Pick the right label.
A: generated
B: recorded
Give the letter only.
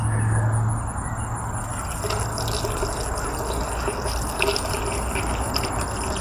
B